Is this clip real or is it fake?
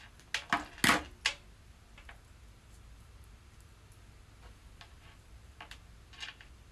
real